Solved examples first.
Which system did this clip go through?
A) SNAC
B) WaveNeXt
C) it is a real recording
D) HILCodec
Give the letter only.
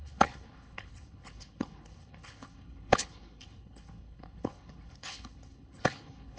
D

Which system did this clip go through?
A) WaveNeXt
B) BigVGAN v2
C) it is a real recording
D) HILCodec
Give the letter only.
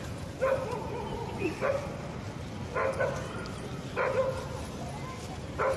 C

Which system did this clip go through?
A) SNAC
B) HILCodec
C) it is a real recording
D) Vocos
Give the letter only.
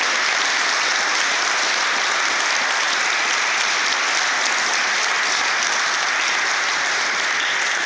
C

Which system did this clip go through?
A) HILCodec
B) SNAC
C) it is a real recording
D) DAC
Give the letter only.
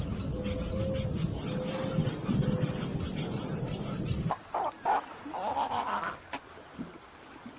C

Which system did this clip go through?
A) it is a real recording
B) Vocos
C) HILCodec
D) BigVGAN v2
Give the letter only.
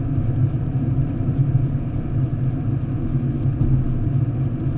A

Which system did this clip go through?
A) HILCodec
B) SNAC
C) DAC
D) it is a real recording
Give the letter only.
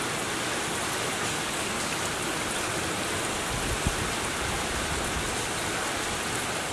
D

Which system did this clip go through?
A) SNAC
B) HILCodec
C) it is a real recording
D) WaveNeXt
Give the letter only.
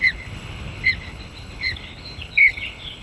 B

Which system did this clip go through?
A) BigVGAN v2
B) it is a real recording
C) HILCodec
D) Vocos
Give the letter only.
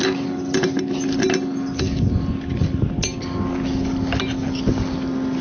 B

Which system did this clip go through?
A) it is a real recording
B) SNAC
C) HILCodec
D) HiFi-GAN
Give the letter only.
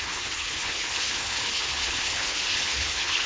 C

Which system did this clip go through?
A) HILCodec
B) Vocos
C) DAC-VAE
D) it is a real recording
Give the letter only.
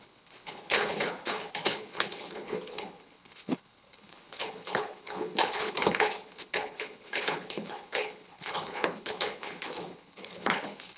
A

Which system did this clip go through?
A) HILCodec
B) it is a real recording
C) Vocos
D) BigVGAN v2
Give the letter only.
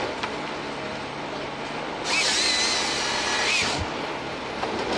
B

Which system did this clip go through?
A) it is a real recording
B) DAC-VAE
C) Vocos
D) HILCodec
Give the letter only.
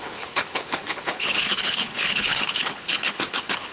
D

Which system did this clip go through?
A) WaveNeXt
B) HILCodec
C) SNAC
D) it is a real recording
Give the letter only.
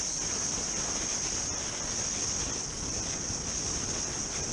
D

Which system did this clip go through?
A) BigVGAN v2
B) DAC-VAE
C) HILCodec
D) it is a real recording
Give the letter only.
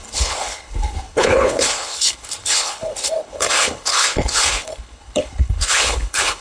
C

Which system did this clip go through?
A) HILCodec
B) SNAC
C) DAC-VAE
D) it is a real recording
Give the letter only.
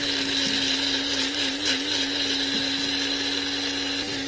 D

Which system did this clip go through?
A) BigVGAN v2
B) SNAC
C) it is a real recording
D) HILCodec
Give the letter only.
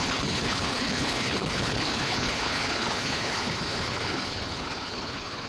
D